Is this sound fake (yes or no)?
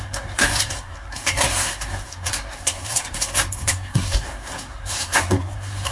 yes